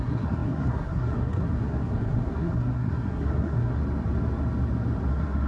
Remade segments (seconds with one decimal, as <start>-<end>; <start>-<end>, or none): 0.0-3.8; 5.1-5.5